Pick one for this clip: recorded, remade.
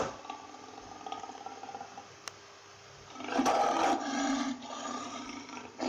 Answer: recorded